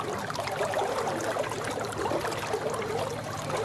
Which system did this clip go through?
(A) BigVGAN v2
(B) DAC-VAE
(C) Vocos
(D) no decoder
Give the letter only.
D